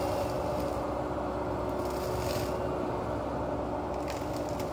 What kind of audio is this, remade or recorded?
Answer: recorded